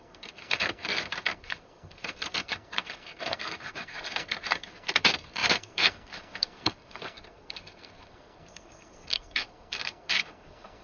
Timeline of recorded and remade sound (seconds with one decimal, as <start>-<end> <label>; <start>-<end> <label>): 0.0-10.8 remade